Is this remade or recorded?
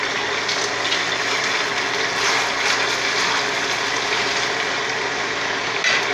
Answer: recorded